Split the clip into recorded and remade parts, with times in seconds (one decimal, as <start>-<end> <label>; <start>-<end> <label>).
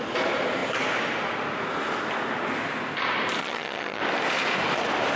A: 0.0-3.4 recorded; 3.4-4.0 remade; 4.0-5.2 recorded